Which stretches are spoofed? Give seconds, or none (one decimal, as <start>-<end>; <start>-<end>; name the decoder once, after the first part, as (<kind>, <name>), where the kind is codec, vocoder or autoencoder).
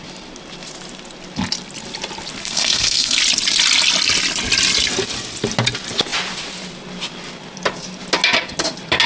2.4-3.2 (codec, SNAC)